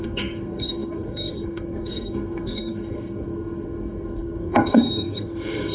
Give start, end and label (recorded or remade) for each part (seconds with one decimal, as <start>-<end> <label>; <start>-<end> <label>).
0.0-5.7 remade